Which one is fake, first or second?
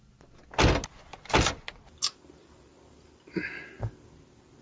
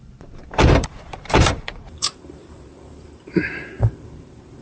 second